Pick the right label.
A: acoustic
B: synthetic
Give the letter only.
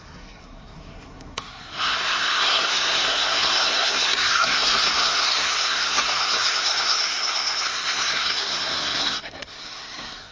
B